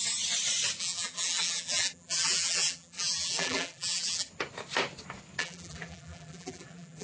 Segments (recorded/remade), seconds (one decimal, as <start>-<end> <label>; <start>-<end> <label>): 0.0-0.8 recorded; 0.8-4.3 remade; 4.3-5.4 recorded; 5.4-7.0 remade